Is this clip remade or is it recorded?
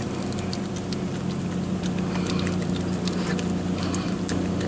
recorded